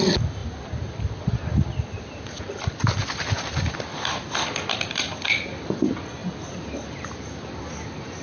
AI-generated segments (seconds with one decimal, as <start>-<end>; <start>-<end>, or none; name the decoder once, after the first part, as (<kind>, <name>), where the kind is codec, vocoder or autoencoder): none